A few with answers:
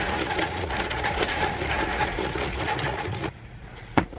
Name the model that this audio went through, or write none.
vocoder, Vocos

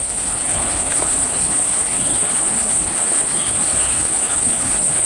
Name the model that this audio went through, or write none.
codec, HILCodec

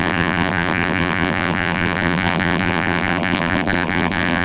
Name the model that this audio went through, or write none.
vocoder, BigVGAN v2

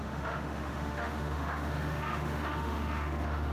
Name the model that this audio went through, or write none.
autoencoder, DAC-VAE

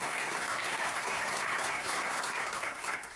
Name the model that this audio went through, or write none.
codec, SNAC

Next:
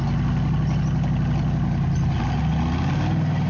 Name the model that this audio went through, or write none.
none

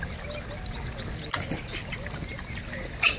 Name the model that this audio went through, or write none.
none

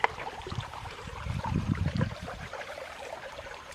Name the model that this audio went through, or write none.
vocoder, BigVGAN v2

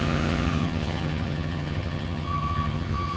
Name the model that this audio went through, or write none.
vocoder, HiFi-GAN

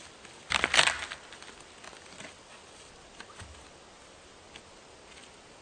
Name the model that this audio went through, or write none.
none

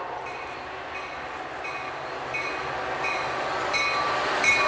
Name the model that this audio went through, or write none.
none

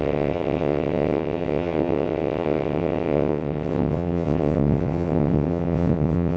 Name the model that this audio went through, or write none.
vocoder, WaveNeXt